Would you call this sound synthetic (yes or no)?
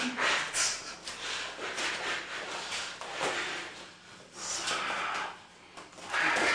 yes